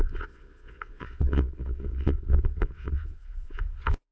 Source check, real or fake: fake